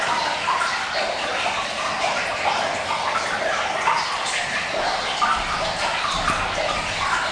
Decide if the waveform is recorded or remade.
recorded